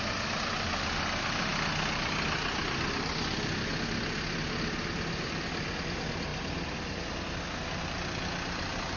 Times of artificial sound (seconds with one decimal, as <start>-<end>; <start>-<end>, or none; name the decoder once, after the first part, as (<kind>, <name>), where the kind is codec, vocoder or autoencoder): none